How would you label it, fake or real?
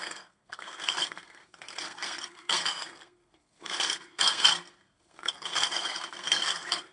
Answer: fake